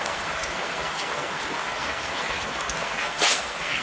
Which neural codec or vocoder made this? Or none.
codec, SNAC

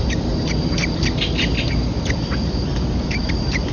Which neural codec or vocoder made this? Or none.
none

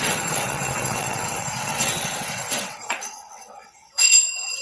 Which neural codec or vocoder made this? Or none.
vocoder, WaveNeXt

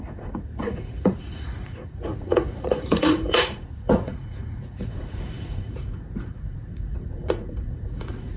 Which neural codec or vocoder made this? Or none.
vocoder, Vocos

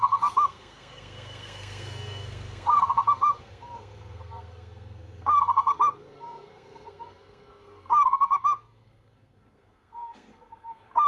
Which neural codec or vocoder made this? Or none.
codec, SNAC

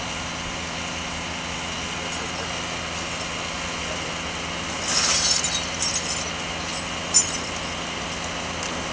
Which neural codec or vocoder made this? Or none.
none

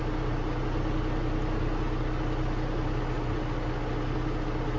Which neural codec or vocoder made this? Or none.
none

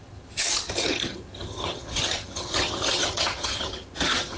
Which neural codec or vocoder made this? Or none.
vocoder, HiFi-GAN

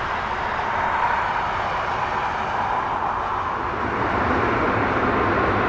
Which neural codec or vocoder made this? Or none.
none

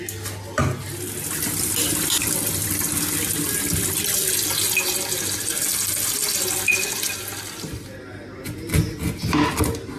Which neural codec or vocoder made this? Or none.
none